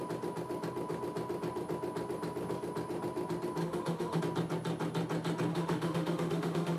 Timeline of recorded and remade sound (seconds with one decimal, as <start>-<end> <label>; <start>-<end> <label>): 0.0-3.6 recorded; 3.6-4.2 remade; 4.2-5.5 recorded; 5.5-6.8 remade